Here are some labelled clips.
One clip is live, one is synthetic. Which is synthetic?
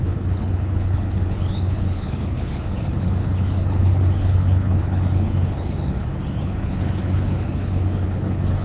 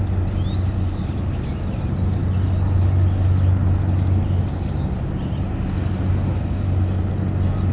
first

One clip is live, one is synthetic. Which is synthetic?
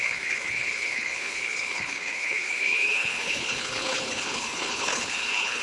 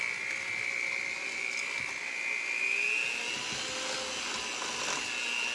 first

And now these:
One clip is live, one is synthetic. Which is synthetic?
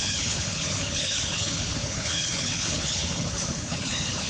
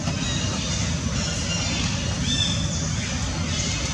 first